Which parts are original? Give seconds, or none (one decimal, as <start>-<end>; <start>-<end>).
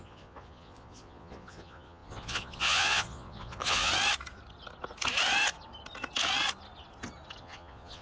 3.9-7.4